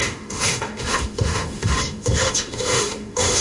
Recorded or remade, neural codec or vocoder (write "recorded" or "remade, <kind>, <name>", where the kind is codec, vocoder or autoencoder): remade, autoencoder, DAC-VAE